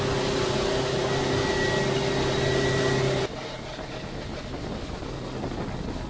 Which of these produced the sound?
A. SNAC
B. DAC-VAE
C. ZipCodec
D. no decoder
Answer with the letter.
D